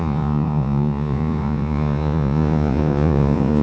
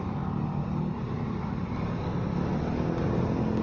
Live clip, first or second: second